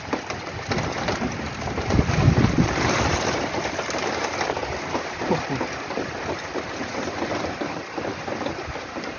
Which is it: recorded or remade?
recorded